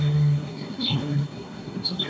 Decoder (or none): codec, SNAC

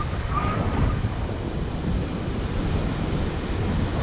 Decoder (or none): none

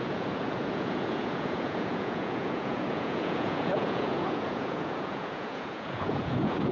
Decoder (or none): vocoder, Vocos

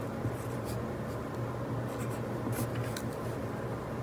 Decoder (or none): none